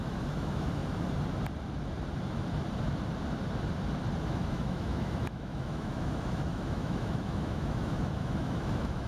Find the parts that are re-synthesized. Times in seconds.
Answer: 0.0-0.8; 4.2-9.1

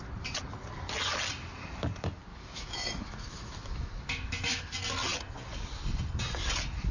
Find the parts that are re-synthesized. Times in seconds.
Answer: 2.3-4.6

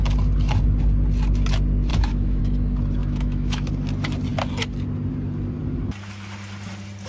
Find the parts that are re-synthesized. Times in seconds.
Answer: 1.9-2.4; 3.0-3.7

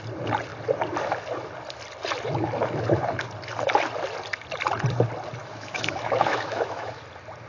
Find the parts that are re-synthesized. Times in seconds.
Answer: 5.4-7.0

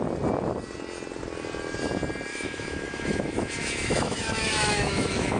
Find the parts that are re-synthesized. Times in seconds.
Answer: 2.3-5.4

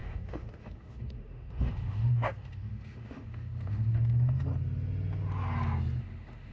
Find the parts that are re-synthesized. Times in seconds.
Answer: 0.0-4.5; 6.0-6.5

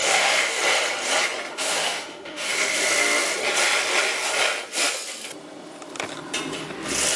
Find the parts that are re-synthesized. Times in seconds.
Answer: 0.0-0.6; 1.5-2.8

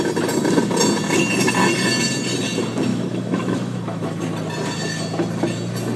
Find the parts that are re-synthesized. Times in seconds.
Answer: 2.9-4.2